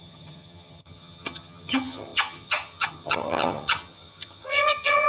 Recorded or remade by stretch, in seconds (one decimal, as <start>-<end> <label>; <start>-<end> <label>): 0.0-5.1 remade